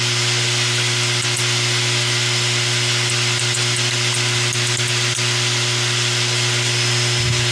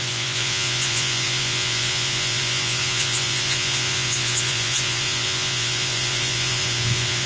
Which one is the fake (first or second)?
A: second